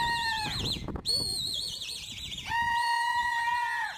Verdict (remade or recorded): remade